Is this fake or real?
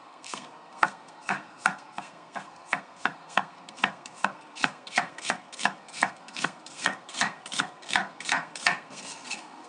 fake